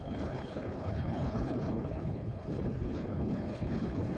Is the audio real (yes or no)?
no